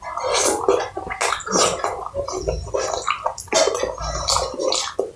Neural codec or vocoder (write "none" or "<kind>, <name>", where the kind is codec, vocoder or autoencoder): none